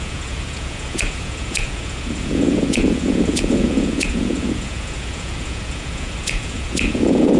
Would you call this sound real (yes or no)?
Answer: no